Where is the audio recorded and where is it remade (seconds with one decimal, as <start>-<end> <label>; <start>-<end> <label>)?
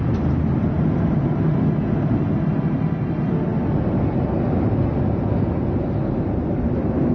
0.0-7.1 recorded